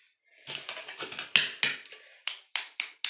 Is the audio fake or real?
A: real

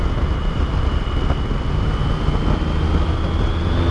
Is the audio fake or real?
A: real